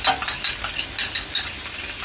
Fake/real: real